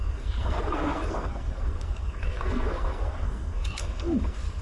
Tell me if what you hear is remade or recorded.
remade